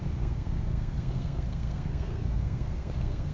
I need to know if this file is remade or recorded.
remade